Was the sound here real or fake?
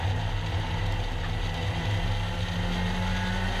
real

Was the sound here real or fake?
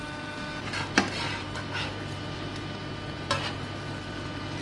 real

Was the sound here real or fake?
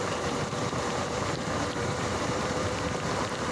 fake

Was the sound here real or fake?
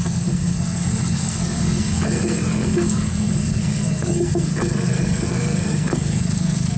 fake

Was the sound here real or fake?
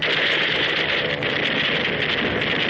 real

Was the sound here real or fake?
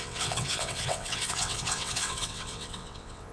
fake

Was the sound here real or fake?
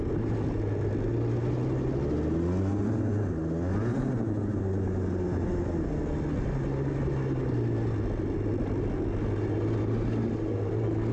real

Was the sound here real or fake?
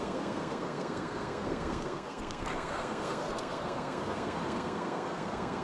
fake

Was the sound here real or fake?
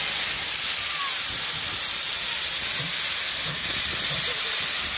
real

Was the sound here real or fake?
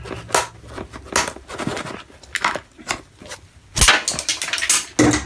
real